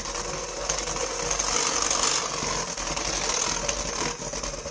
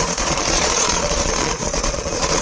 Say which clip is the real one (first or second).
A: first